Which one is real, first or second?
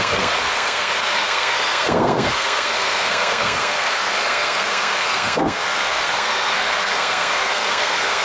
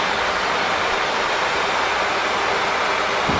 second